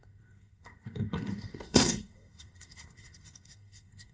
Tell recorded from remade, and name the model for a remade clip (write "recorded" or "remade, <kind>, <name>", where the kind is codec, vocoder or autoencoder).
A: remade, codec, SNAC